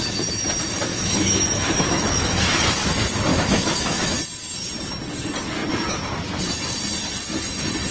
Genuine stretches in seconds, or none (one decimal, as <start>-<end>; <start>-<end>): 0.0-0.9; 2.7-3.3; 4.2-7.9